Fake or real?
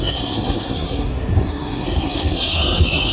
fake